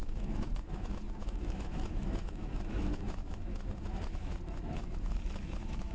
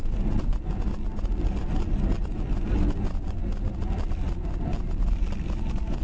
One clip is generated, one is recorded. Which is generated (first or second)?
first